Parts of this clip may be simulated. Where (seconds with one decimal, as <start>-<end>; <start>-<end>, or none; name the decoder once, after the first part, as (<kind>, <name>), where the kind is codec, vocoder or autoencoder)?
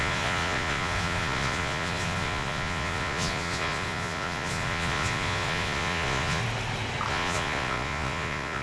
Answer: 0.0-6.4 (vocoder, Vocos); 7.1-8.6